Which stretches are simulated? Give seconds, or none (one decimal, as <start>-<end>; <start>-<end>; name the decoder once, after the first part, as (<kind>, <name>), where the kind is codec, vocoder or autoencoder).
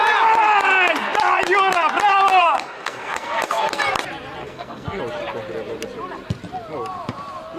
2.4-3.8 (codec, SNAC); 4.4-5.0